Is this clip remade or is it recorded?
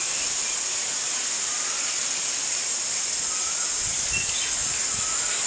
recorded